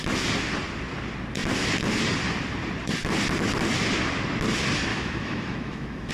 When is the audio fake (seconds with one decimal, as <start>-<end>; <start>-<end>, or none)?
4.9-6.1